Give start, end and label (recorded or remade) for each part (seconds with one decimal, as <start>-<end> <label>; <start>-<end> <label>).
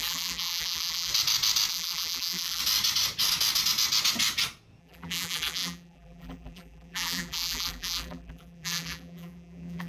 0.0-1.1 remade; 1.1-1.7 recorded; 1.7-2.6 remade; 2.6-4.8 recorded; 4.8-9.9 remade